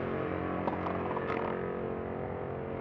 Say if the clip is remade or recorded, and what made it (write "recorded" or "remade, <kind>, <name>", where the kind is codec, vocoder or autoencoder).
recorded